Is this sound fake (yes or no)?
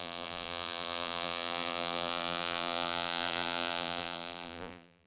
yes